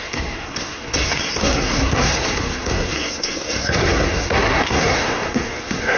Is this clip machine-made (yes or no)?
yes